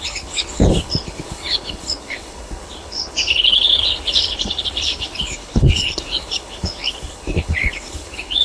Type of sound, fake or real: fake